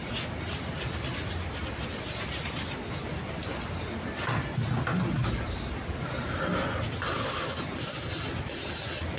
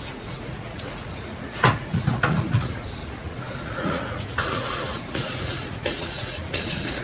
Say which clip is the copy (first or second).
second